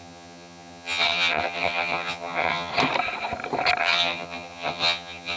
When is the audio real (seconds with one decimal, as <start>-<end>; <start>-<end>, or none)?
2.7-3.8